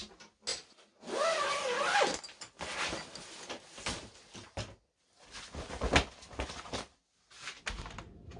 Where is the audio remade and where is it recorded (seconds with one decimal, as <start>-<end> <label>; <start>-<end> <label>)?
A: 0.0-8.4 recorded